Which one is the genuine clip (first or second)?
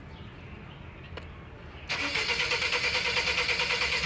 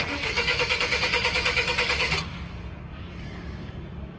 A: first